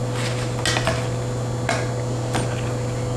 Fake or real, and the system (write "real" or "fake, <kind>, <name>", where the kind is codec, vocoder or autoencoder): real